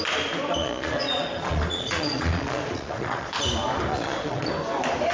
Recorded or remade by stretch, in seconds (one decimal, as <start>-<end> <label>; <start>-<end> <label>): 0.0-0.6 recorded; 0.6-3.3 remade; 3.3-3.9 recorded; 3.9-4.5 remade; 4.5-5.1 recorded